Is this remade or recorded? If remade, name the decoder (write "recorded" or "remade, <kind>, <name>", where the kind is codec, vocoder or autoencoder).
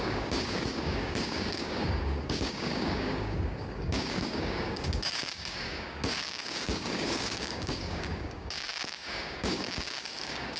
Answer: remade, codec, DAC